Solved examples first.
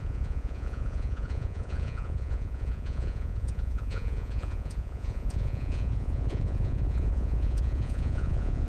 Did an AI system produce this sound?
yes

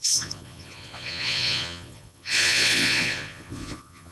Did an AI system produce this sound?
yes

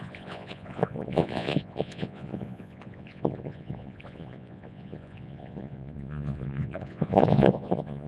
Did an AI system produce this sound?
yes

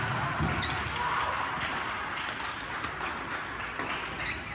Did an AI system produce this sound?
no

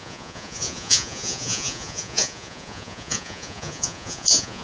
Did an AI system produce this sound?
yes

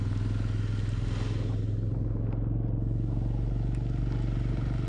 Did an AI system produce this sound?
no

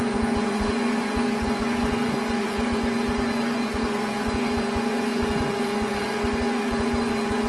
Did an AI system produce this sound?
yes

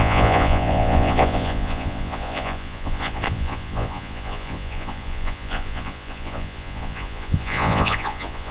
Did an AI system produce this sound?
yes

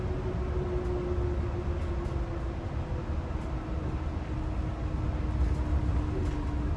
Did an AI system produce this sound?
no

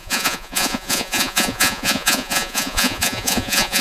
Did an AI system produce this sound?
yes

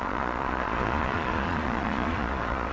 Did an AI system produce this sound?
yes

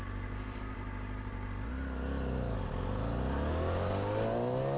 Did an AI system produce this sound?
no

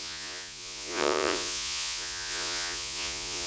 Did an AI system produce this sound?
yes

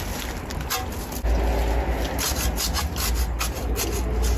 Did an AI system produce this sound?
no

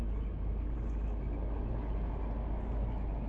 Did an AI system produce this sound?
no